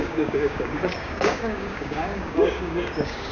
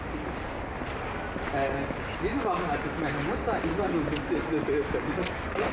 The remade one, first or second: first